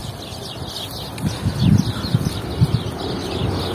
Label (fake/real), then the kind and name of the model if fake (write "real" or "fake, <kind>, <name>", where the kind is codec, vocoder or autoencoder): real